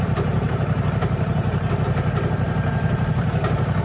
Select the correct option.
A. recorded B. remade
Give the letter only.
B